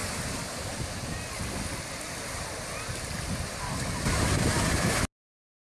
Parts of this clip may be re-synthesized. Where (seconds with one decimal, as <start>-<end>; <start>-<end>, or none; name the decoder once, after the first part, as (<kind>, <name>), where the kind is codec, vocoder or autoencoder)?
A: none

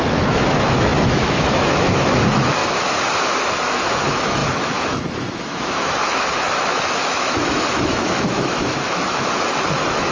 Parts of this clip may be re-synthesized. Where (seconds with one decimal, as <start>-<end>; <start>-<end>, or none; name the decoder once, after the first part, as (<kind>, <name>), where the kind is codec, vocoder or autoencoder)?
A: 0.0-2.6 (autoencoder, DAC-VAE); 3.3-10.1

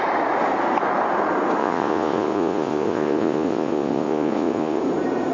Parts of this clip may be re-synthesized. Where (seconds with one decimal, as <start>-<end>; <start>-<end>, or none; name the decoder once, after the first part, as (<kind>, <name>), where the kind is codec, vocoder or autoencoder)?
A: 1.6-4.8 (vocoder, Vocos)

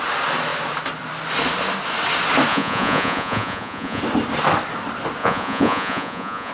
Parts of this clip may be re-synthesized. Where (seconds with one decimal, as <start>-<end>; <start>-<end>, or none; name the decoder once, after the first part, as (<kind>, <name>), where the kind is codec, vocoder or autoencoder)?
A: 2.5-4.0 (vocoder, Vocos); 5.2-6.5

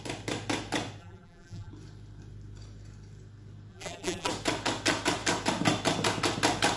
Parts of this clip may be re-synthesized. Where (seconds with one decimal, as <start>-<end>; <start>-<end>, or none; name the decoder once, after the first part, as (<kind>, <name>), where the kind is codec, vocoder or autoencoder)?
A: 1.0-1.7 (vocoder, BigVGAN v2); 3.7-4.3

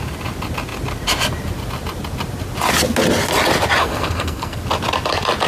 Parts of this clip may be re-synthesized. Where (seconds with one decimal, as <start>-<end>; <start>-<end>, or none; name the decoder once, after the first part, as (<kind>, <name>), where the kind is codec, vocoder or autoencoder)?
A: 3.8-4.6 (codec, SNAC)

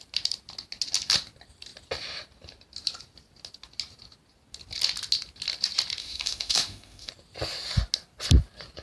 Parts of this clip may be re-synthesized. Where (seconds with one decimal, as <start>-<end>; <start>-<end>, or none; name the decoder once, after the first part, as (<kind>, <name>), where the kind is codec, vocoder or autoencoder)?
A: 6.0-7.1 (autoencoder, DAC-VAE)

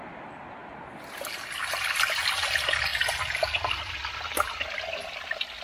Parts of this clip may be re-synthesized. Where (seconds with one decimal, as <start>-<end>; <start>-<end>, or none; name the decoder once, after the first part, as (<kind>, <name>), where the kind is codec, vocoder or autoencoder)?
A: none